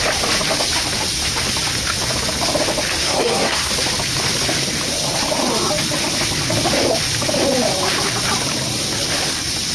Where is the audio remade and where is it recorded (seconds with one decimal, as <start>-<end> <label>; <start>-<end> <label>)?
0.0-3.0 recorded; 3.0-3.7 remade; 3.7-9.7 recorded